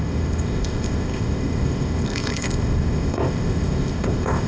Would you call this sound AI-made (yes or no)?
yes